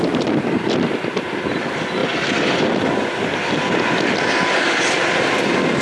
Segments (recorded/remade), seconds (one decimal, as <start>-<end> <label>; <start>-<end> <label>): 0.0-5.8 recorded